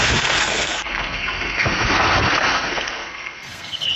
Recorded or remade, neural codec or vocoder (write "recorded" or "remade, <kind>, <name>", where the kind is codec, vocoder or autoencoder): remade, codec, SNAC